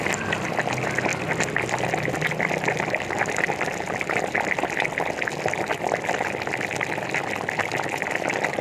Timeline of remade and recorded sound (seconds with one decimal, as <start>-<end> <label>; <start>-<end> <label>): 0.0-8.6 recorded